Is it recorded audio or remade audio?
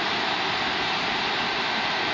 recorded